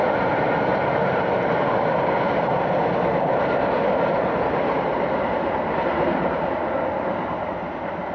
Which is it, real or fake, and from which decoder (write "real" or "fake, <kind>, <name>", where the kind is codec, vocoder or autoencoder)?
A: real